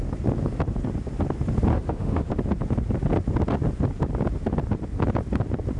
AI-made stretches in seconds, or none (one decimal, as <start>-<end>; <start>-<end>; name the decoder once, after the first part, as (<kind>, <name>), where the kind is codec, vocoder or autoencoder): 1.7-2.3 (autoencoder, DAC-VAE)